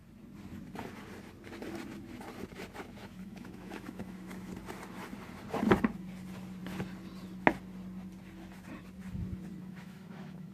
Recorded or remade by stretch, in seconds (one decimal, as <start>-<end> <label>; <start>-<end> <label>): 0.0-3.0 recorded; 3.0-4.5 remade; 4.5-9.6 recorded; 9.6-10.5 remade